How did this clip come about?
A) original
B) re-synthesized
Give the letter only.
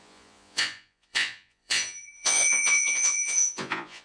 B